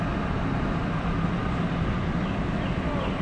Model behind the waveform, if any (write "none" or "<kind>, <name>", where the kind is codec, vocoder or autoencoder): none